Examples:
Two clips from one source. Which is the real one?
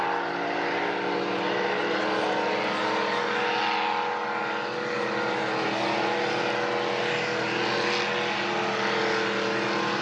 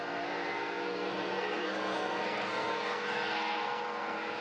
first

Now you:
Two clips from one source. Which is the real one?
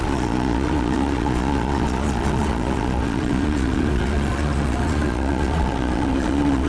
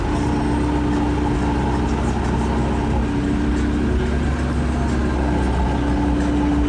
second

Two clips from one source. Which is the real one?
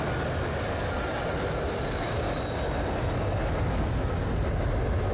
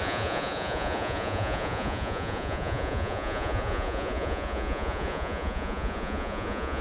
first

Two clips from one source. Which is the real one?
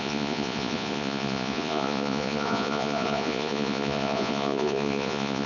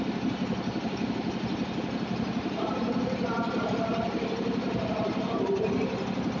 second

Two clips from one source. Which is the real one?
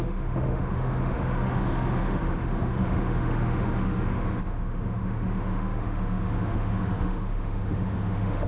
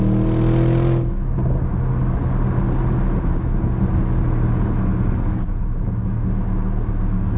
second